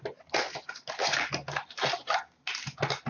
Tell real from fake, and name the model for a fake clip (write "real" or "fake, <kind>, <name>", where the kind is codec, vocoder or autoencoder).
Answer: real